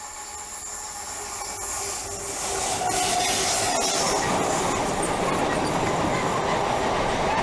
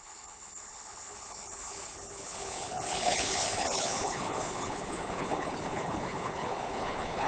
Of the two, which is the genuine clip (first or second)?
first